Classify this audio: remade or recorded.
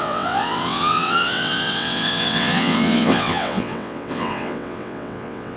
remade